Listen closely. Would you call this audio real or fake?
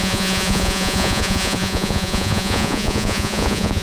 fake